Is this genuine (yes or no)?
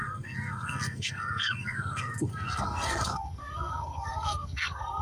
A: no